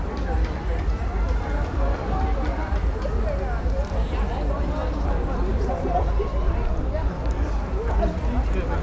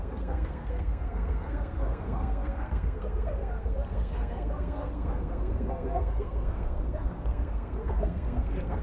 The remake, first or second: second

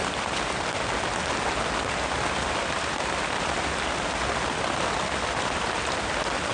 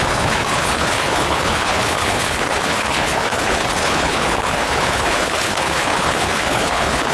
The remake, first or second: second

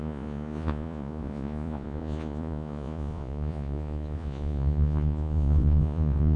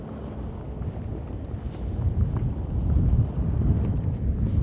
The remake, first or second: first